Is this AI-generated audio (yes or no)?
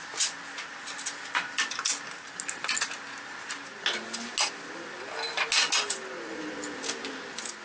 no